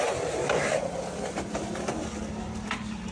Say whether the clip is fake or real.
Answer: real